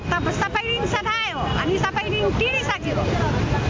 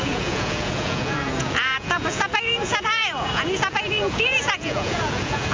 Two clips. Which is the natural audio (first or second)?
first